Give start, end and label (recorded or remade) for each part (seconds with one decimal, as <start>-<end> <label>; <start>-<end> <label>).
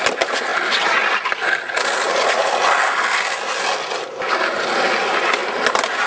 0.0-6.1 recorded